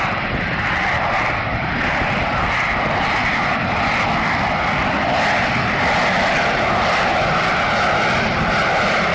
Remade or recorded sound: recorded